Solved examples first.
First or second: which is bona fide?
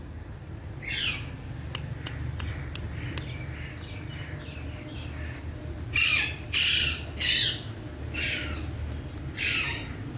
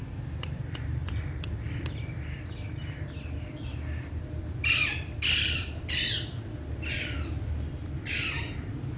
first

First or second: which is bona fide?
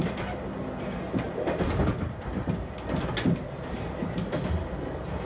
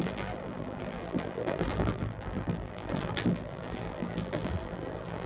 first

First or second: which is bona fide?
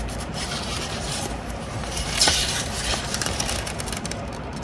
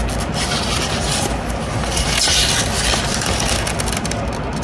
second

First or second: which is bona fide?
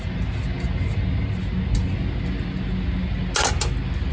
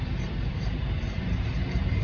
first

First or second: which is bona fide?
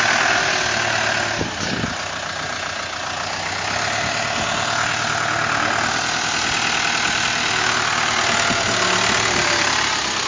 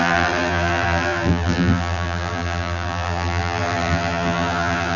first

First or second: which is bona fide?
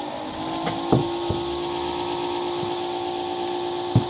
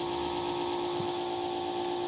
second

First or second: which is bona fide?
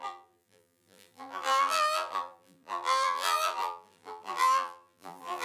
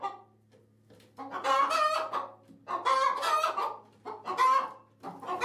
second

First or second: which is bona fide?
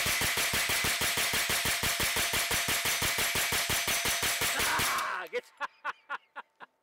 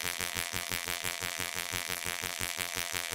first